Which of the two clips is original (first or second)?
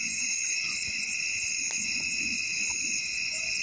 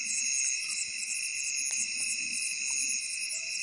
second